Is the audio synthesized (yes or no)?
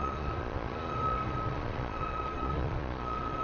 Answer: yes